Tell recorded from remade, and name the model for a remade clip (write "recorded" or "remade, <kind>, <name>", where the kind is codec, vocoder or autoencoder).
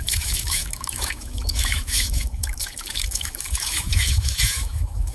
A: remade, autoencoder, DAC-VAE